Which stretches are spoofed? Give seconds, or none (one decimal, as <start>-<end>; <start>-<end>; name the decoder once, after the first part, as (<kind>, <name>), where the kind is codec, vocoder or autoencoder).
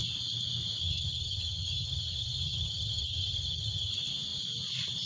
0.8-3.9 (vocoder, HiFi-GAN)